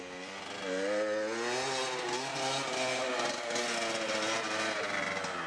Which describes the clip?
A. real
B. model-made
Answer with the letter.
A